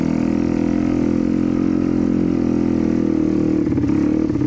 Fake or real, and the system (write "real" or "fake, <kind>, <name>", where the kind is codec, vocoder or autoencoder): real